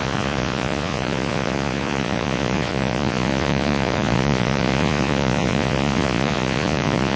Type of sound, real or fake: fake